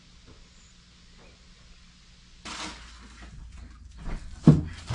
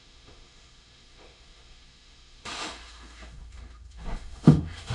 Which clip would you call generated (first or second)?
second